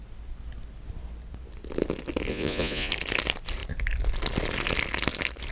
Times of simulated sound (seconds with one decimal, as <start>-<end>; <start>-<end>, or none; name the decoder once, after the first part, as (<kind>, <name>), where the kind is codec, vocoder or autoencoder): 2.3-2.9 (vocoder, Vocos)